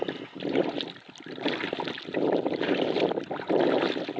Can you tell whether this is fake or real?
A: real